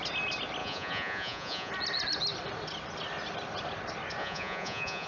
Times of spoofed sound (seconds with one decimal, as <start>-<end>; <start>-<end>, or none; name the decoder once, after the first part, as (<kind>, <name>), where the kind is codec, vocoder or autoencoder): 0.6-1.7 (vocoder, Vocos); 4.2-5.1